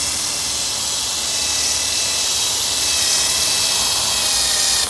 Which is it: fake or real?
real